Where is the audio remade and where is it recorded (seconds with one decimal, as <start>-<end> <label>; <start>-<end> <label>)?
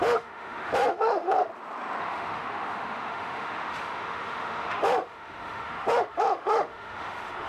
0.0-1.5 remade; 1.5-2.0 recorded; 2.0-7.5 remade